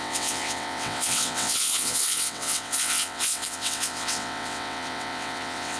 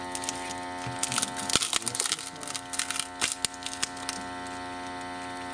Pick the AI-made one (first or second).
first